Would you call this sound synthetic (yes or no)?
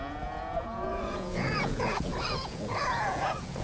yes